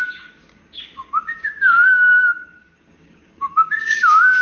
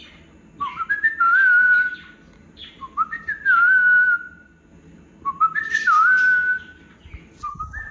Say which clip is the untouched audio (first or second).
second